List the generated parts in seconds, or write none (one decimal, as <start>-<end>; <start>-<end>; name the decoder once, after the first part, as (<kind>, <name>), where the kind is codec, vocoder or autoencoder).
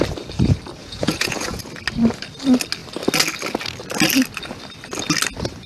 0.8-1.6 (vocoder, Vocos)